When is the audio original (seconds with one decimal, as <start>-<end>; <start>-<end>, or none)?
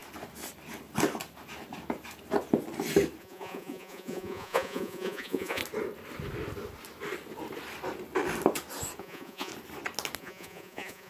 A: 0.0-3.2; 5.6-9.0; 9.5-10.2